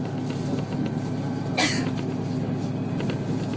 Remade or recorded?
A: recorded